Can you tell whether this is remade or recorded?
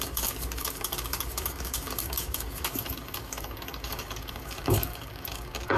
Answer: remade